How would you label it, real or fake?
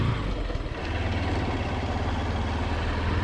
real